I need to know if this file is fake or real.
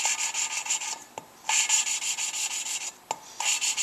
real